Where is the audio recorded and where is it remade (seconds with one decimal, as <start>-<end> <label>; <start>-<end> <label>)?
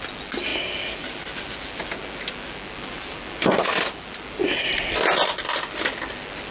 0.0-6.5 recorded